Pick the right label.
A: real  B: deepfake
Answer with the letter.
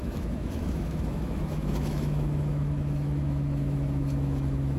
B